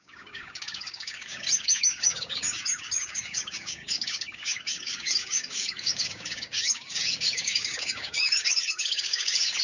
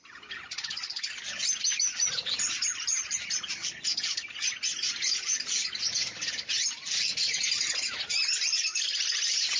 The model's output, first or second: first